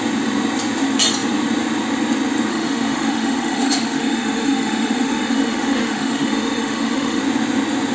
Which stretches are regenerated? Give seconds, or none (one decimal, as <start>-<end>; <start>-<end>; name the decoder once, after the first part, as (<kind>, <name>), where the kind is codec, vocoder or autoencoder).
2.5-7.2 (autoencoder, DAC-VAE)